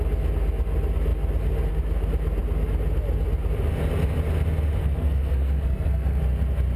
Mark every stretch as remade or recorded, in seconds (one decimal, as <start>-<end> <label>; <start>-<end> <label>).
0.0-4.8 recorded; 4.8-6.2 remade; 6.2-6.8 recorded